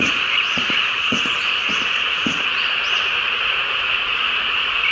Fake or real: fake